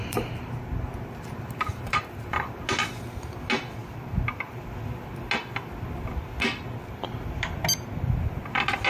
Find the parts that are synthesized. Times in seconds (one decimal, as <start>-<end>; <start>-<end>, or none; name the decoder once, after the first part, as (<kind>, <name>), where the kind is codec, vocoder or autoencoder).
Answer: 0.0-2.5 (vocoder, BigVGAN v2)